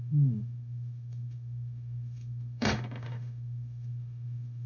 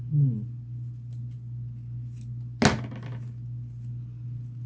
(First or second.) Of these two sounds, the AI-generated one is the first